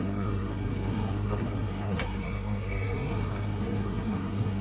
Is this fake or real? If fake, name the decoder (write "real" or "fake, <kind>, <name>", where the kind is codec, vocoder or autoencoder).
fake, codec, SNAC